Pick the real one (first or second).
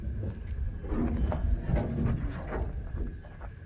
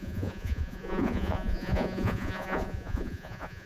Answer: first